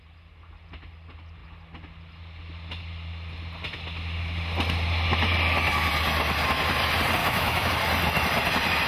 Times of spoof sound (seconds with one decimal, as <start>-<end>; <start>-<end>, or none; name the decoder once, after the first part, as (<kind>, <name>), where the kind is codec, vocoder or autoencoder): 7.2-7.7 (autoencoder, DAC-VAE)